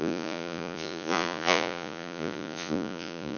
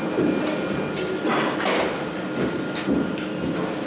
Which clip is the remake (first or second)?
first